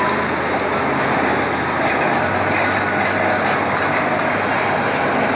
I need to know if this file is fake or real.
real